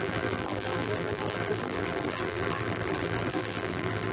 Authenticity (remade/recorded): remade